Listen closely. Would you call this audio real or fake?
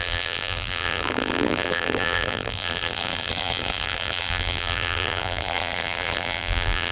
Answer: fake